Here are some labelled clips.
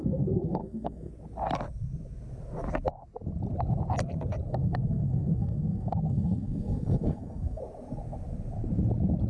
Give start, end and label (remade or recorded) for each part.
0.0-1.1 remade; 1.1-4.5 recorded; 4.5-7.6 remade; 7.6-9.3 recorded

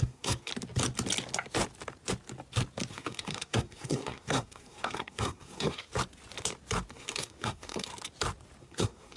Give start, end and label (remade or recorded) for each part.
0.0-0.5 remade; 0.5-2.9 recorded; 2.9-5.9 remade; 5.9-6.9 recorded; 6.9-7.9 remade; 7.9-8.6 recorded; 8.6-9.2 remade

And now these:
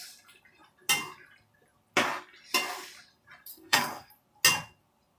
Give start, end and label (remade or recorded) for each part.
0.0-3.5 recorded; 3.5-4.1 remade; 4.1-5.2 recorded